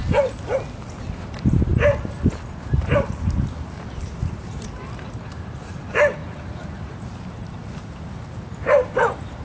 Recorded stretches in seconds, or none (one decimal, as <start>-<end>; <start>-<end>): 0.0-1.2; 1.7-3.0